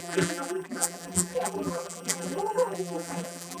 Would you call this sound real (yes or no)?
no